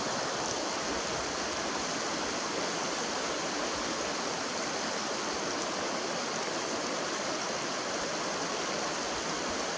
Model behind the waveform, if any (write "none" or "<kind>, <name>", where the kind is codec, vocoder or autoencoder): none